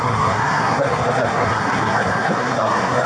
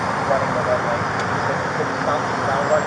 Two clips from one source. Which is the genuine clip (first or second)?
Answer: second